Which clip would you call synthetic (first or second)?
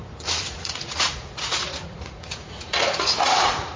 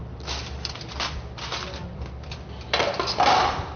first